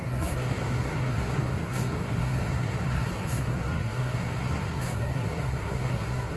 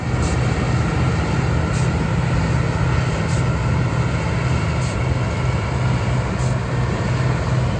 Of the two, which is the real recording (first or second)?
second